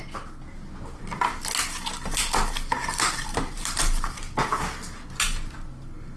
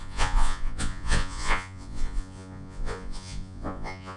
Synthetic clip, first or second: second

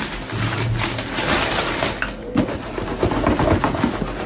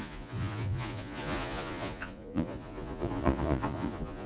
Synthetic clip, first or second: second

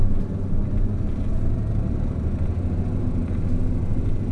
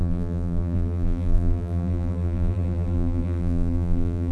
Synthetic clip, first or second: second